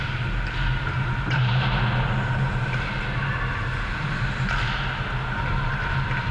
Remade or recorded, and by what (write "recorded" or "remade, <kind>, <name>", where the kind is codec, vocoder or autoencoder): recorded